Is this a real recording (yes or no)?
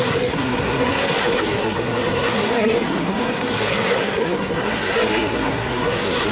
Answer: no